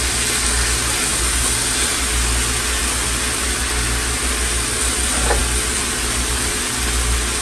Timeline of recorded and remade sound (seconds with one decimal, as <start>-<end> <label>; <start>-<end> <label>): 0.0-7.4 recorded